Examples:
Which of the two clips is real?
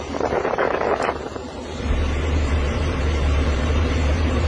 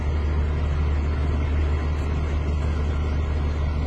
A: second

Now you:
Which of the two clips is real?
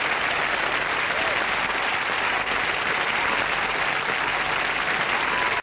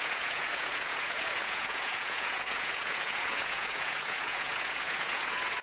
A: first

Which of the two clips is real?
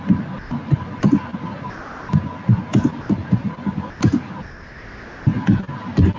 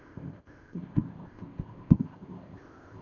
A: first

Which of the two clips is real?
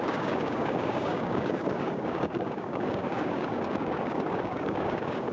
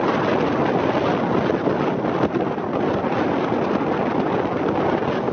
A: second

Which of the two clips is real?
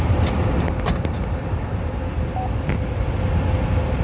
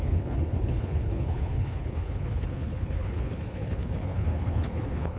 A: first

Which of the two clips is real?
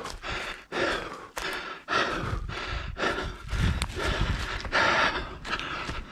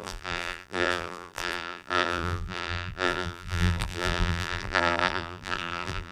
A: first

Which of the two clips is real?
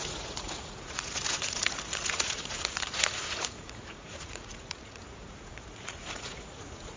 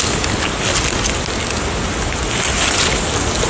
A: second